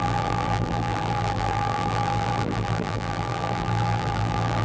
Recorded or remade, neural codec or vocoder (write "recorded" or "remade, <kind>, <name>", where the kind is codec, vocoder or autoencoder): remade, vocoder, BigVGAN v2